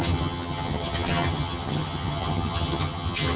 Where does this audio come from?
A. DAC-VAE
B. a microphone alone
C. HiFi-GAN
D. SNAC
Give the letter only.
C